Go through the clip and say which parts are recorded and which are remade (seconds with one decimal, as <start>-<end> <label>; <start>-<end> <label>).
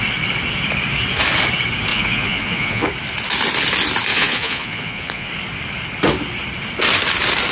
0.0-1.9 recorded; 1.9-2.9 remade; 2.9-4.1 recorded; 4.1-5.3 remade; 5.3-7.5 recorded